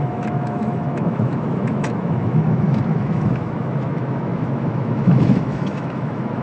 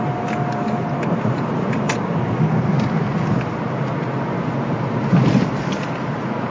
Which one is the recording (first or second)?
second